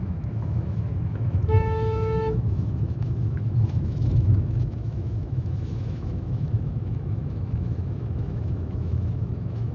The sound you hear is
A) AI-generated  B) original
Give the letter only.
A